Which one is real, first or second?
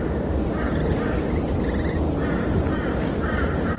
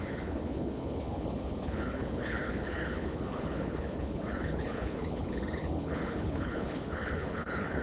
first